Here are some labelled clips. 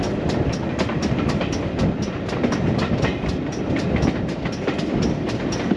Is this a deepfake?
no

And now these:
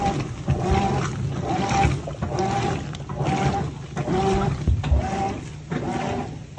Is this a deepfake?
no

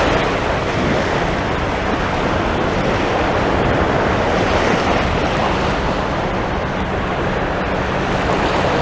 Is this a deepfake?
no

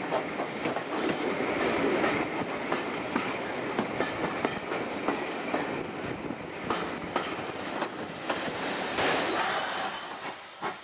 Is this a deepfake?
no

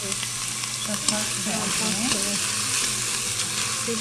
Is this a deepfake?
no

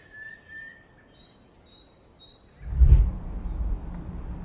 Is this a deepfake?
no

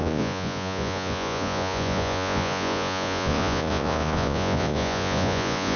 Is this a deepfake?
yes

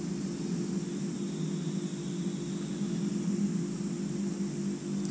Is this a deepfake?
no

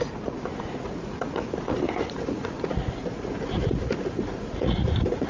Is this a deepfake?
yes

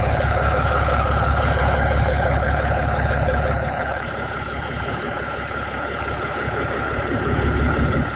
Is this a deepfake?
yes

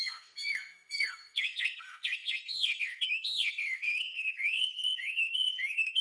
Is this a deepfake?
yes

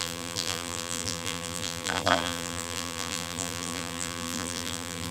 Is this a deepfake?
yes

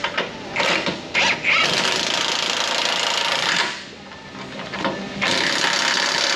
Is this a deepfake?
no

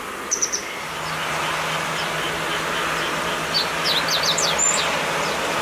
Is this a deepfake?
no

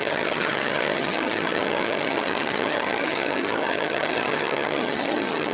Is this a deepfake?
yes